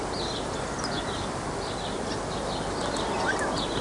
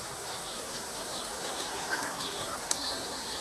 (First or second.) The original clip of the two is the first